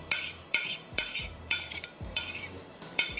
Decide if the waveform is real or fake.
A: fake